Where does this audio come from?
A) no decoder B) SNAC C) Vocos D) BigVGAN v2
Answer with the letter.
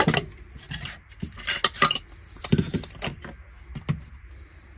A